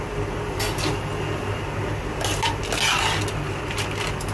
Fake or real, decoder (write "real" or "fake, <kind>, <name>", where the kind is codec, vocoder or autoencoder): real